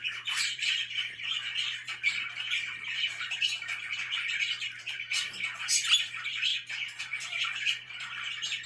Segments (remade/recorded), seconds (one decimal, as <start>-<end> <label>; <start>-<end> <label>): 0.0-6.5 remade; 6.5-7.0 recorded; 7.0-8.7 remade